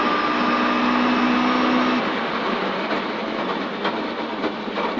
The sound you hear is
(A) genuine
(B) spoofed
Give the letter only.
A